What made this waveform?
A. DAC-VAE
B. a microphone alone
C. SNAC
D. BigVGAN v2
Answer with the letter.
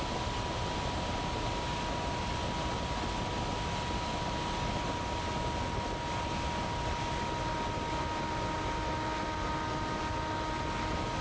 B